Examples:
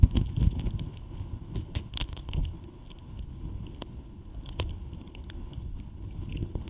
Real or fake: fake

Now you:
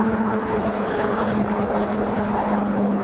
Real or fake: fake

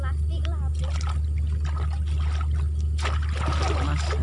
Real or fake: real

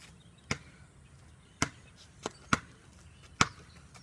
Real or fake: real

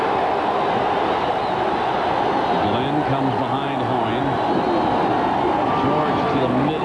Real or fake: real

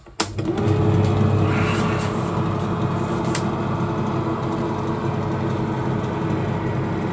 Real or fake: real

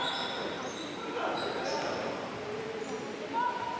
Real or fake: real